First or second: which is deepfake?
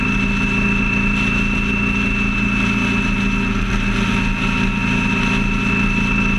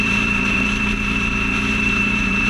second